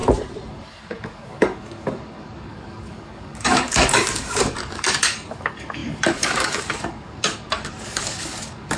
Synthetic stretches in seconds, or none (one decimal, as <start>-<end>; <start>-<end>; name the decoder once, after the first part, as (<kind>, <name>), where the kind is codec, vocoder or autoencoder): 0.5-8.8 (codec, DAC)